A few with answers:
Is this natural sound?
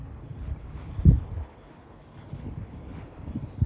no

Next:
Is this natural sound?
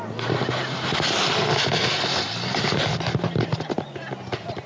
yes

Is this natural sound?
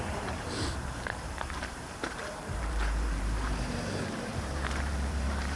no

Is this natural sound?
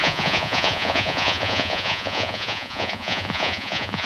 no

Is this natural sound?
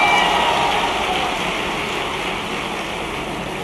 yes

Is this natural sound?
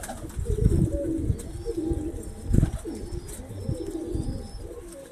yes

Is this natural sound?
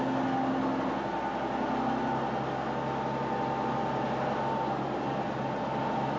yes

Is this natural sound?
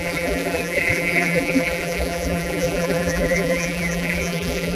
no